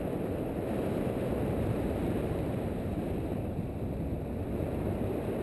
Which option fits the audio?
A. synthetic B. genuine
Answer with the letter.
A